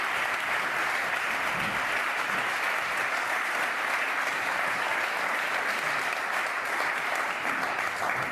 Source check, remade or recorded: remade